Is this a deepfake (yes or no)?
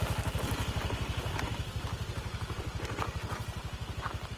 no